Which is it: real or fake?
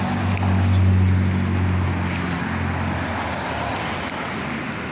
real